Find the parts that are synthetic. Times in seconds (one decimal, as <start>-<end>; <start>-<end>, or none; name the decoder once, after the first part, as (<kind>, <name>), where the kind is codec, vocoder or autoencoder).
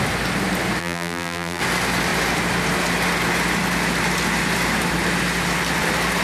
0.8-1.6 (vocoder, BigVGAN v2)